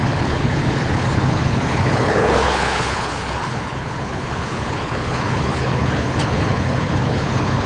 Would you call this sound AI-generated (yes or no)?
yes